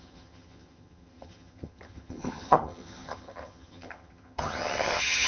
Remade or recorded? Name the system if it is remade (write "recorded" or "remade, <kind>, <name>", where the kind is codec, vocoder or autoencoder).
remade, vocoder, HiFi-GAN